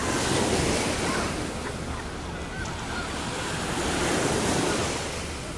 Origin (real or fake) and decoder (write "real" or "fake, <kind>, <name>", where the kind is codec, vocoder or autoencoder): real